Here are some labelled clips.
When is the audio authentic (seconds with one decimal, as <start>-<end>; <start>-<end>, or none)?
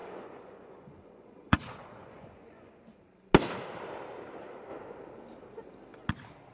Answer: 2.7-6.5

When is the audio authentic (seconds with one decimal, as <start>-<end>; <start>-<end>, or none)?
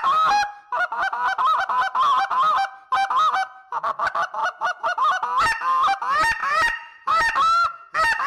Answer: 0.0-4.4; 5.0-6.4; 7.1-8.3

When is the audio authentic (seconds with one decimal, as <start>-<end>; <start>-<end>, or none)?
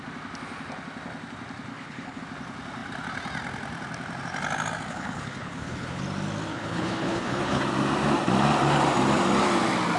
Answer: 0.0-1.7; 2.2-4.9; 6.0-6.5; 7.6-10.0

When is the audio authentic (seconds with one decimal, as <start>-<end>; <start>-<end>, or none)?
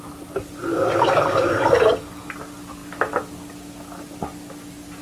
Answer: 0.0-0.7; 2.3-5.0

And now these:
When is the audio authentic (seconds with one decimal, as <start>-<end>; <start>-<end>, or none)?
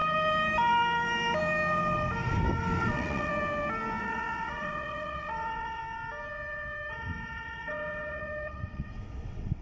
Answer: 0.0-2.8; 3.3-4.0; 5.8-6.9